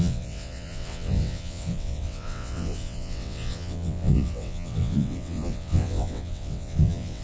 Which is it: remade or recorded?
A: remade